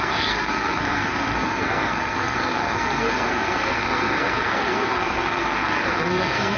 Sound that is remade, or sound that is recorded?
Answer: remade